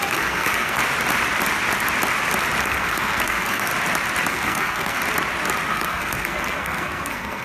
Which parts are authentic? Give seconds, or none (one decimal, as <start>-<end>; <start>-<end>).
0.8-2.6; 3.7-4.3; 5.0-5.7